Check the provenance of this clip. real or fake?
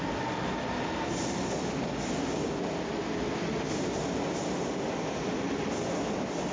real